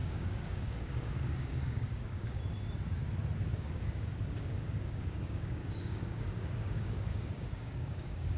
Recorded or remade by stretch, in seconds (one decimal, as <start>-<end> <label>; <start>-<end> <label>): 0.0-2.4 remade; 2.4-3.5 recorded; 3.5-8.4 remade